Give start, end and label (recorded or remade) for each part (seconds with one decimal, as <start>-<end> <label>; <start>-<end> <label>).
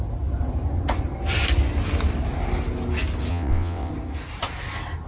0.0-3.3 recorded; 3.3-3.9 remade; 3.9-5.1 recorded